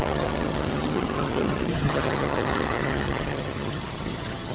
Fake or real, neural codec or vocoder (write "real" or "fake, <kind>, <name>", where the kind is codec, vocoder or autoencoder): fake, vocoder, HiFi-GAN